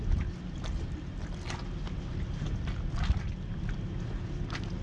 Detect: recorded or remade recorded